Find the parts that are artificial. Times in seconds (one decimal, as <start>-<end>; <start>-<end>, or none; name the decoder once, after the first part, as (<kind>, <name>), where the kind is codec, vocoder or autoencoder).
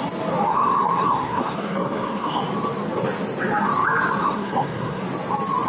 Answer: 0.5-2.4 (codec, SNAC); 4.2-5.0